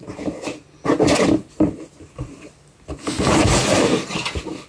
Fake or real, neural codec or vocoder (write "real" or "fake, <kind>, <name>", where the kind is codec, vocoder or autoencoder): real